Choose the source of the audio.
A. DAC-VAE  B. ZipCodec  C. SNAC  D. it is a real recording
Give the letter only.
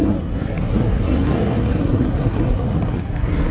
C